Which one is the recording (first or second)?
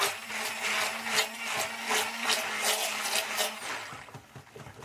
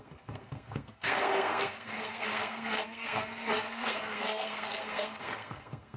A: first